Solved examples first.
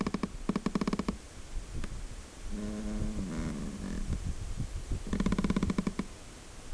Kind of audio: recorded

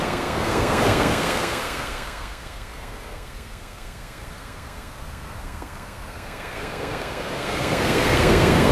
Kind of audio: remade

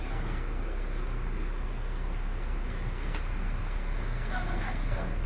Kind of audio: remade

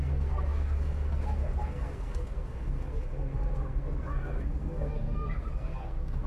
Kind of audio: remade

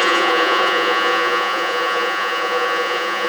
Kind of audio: remade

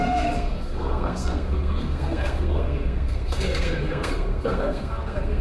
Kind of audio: remade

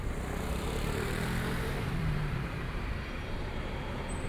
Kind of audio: remade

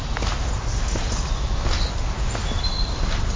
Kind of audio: recorded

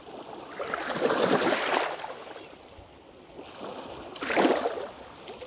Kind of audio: recorded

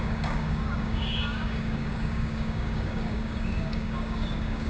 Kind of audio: remade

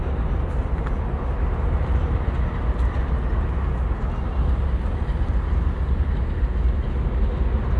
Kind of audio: recorded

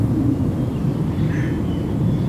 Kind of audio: recorded